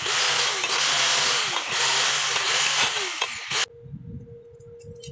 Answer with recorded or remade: recorded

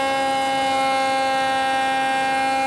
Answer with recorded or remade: recorded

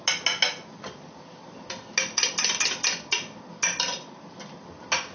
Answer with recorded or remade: recorded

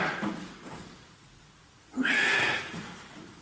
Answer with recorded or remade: remade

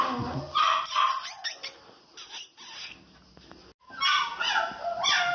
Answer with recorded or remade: recorded